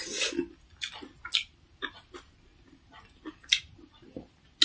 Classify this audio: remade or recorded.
recorded